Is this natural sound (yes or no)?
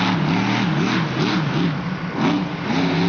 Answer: yes